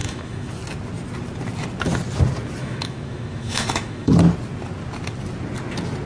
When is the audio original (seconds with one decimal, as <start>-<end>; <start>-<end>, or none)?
0.5-2.6; 4.1-6.1